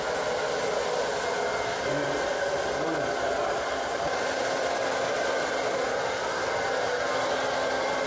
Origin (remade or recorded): recorded